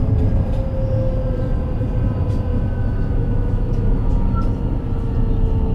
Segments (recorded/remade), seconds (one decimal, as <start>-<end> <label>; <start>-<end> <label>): 0.0-2.5 recorded; 2.5-4.1 remade; 4.1-5.7 recorded